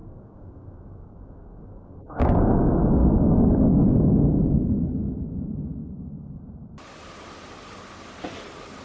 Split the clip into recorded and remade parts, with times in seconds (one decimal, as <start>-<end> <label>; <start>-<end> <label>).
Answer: 0.0-2.4 remade; 2.4-3.0 recorded; 3.0-4.3 remade; 4.3-5.8 recorded; 5.8-6.4 remade; 6.4-8.8 recorded